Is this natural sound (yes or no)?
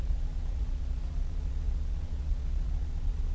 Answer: no